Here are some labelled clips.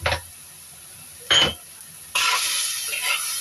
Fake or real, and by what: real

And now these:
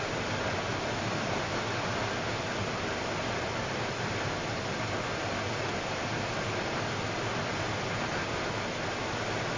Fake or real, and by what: real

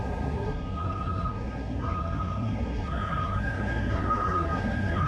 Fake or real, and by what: fake, codec, SNAC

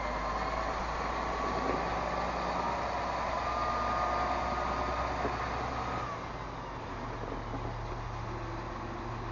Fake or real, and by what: real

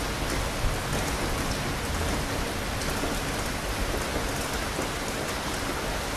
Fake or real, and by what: real